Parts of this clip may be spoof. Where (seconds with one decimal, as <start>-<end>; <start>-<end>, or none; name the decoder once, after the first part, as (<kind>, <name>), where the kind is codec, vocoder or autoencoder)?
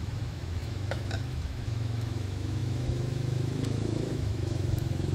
0.0-5.1 (autoencoder, DAC-VAE)